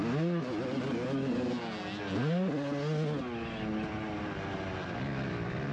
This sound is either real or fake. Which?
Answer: real